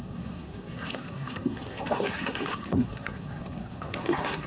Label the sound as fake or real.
fake